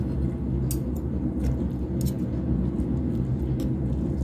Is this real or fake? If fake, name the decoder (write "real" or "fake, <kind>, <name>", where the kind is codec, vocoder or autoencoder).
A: real